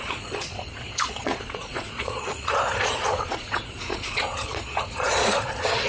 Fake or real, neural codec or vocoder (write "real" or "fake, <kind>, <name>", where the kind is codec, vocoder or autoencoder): fake, vocoder, Vocos